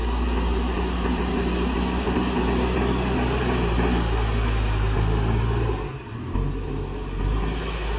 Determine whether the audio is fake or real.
real